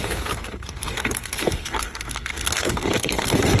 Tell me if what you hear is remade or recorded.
remade